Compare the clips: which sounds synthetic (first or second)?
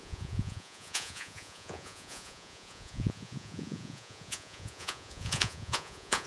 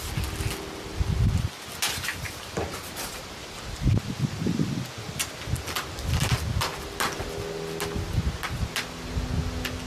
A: first